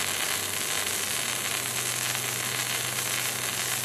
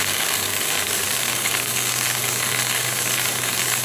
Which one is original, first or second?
first